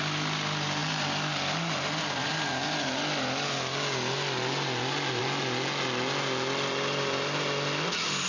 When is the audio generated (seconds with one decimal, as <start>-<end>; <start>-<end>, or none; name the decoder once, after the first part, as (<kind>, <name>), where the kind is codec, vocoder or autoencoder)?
none